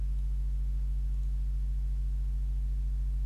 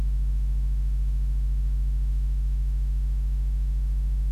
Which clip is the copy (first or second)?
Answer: second